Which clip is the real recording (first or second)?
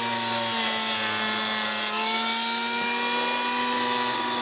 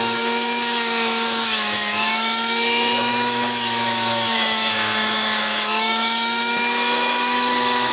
first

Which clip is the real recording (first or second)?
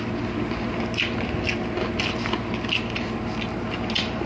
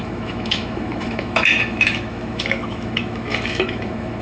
first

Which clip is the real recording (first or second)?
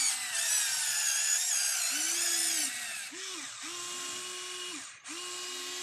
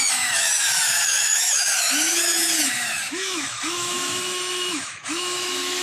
first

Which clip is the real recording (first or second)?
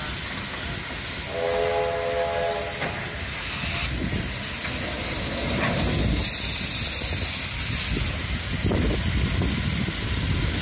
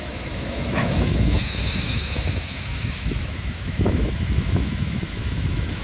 first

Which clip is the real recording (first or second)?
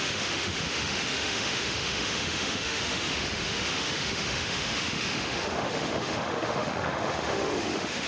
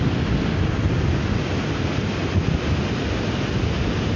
second